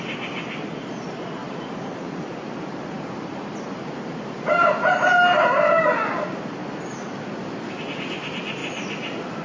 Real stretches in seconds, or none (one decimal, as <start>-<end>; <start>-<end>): 0.0-1.4; 4.9-9.4